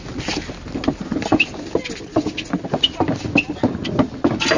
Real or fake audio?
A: real